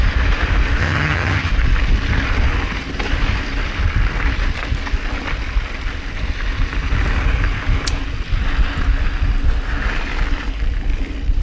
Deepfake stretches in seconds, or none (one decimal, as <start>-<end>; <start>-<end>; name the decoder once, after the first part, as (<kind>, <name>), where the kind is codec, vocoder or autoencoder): 0.8-1.5 (vocoder, HiFi-GAN)